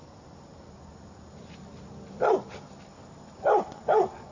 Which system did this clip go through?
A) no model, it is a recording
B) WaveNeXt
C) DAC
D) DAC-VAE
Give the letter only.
A